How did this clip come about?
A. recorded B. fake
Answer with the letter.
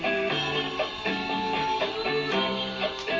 A